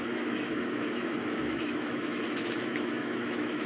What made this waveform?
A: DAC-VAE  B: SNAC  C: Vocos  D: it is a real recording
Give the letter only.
A